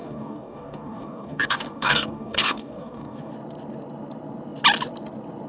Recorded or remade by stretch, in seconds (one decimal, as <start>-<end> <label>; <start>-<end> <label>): 0.0-3.3 remade; 3.3-5.5 recorded